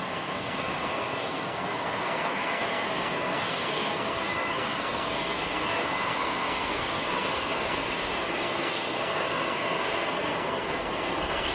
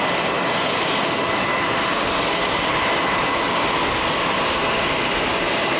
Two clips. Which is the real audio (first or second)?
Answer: second